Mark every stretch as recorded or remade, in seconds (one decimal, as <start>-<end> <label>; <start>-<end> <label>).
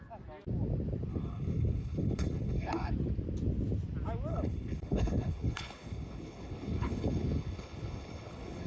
0.0-1.1 recorded; 1.1-2.9 remade; 2.9-4.3 recorded; 4.3-8.7 remade